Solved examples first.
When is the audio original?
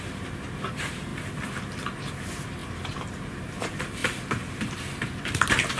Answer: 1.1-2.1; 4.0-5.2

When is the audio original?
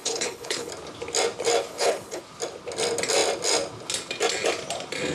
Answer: 0.7-1.7; 2.2-5.1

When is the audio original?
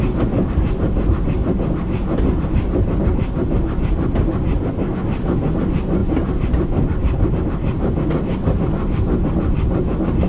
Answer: 0.0-6.0; 7.3-10.3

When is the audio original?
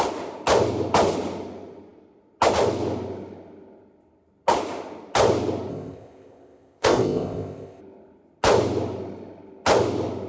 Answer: 0.0-5.7; 7.8-10.3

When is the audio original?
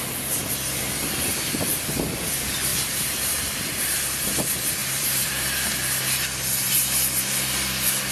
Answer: 0.0-2.7; 3.8-4.8; 5.3-8.1